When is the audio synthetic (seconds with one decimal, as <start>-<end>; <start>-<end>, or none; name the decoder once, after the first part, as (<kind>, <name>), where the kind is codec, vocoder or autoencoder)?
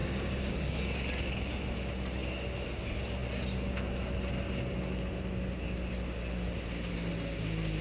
0.0-0.8 (codec, DAC)